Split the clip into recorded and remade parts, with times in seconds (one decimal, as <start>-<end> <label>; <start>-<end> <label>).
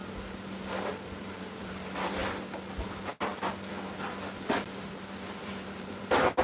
0.0-0.8 recorded; 0.8-2.2 remade; 2.2-5.4 recorded; 5.4-6.4 remade